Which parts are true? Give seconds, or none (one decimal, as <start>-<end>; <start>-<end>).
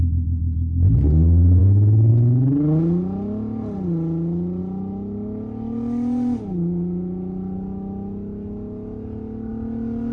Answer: 0.0-10.1